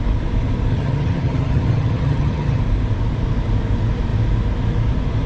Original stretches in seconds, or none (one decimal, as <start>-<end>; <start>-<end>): 0.0-0.7; 2.6-5.3